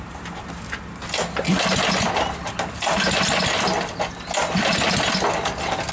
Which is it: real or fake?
real